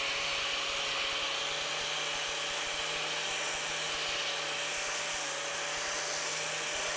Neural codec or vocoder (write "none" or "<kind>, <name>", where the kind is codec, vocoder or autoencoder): none